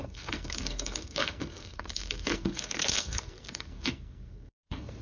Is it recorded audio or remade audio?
remade